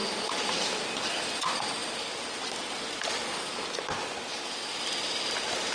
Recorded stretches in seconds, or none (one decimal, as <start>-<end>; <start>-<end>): 0.0-5.7